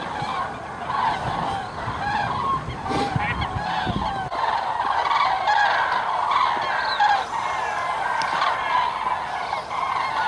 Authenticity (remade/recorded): recorded